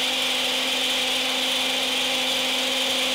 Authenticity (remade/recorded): recorded